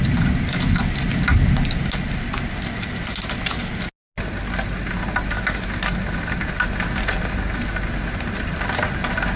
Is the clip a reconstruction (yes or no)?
no